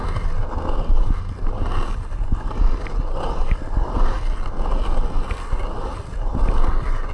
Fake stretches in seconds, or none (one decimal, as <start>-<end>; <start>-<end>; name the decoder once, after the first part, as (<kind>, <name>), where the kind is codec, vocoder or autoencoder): none